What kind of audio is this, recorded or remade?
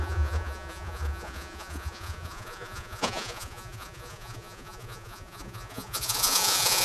remade